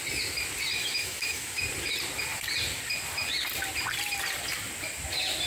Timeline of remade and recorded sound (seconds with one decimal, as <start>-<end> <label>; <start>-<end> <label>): 0.0-0.8 recorded; 0.8-1.6 remade; 1.6-5.5 recorded